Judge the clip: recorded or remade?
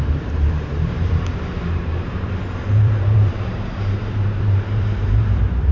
remade